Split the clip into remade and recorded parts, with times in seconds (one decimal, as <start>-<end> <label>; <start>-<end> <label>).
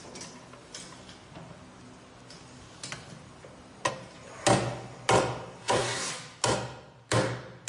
0.0-5.6 recorded; 5.6-6.1 remade; 6.1-7.7 recorded